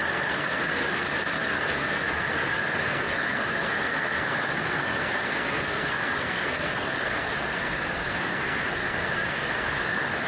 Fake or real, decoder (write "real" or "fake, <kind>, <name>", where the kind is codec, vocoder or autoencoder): fake, codec, SNAC